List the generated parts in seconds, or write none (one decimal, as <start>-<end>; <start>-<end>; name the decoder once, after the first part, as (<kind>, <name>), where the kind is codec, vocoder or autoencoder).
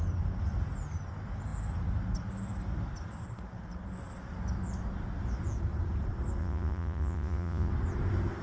6.4-7.7 (vocoder, Vocos)